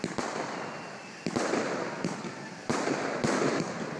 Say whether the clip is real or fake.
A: real